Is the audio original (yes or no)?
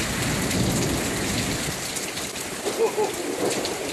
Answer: yes